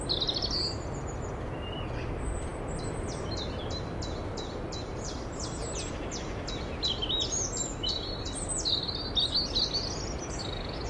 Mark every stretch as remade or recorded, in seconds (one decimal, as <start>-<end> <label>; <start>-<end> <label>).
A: 0.0-10.9 recorded